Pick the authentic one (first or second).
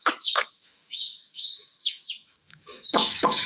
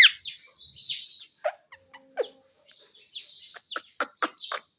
second